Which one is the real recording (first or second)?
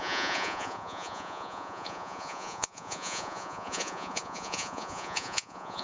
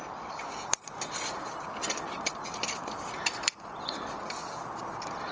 second